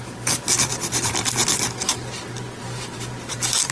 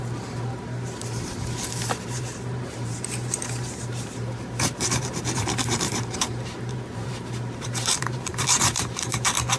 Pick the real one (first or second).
first